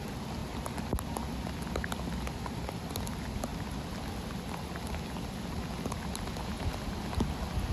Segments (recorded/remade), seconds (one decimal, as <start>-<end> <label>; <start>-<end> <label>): 0.0-7.7 recorded